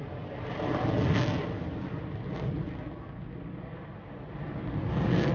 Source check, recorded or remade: recorded